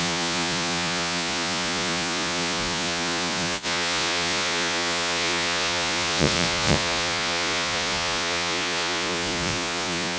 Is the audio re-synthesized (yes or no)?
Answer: yes